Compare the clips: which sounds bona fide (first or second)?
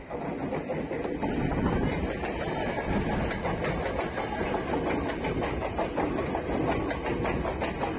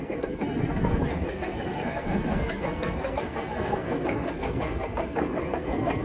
first